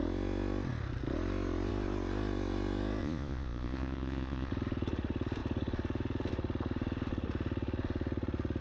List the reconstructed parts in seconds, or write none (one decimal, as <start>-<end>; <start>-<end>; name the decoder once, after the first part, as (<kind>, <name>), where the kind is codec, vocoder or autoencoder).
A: 3.0-4.5 (vocoder, Vocos)